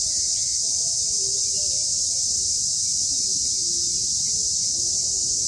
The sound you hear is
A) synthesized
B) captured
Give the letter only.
B